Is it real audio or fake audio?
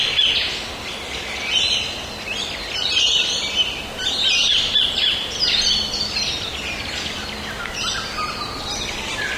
real